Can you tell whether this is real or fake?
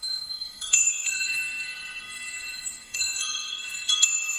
fake